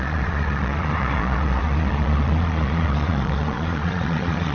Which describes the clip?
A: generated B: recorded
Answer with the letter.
A